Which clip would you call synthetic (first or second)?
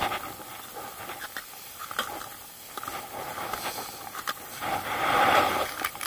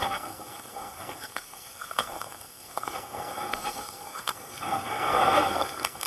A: second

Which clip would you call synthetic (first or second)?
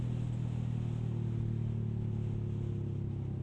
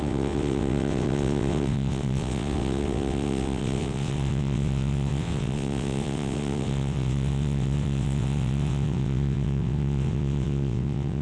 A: second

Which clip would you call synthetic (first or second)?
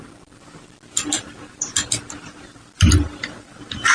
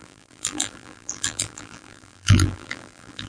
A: second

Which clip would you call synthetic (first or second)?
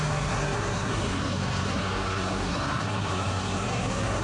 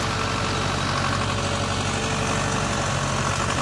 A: first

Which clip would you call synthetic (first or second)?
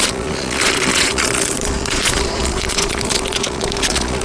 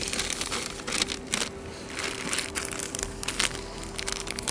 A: first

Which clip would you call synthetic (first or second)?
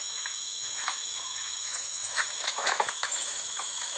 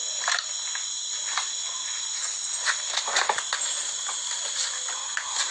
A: first